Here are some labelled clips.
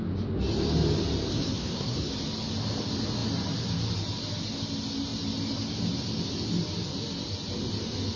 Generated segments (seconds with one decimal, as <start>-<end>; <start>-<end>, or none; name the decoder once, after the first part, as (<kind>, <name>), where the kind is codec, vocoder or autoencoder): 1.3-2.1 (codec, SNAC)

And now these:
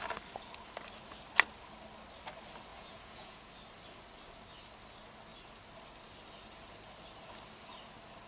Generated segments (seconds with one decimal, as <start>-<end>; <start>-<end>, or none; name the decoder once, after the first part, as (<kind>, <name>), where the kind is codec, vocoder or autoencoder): 2.7-3.5 (vocoder, Vocos)

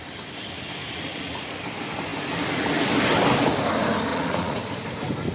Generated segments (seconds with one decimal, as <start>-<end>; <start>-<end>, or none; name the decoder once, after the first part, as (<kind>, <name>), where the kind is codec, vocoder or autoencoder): 0.8-1.6 (vocoder, Vocos); 4.1-4.6